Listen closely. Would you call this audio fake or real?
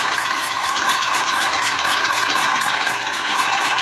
fake